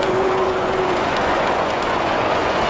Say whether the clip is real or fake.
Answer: fake